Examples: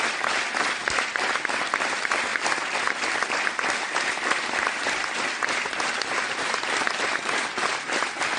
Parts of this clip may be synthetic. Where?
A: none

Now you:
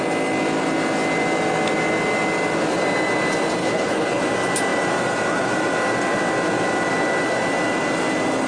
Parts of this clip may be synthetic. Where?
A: 3.6-4.2 (codec, HILCodec)

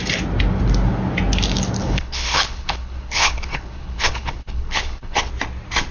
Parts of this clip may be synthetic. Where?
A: 1.8-5.3 (codec, HILCodec)

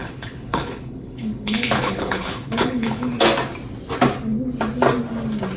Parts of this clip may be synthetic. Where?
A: 0.0-3.1 (codec, HILCodec)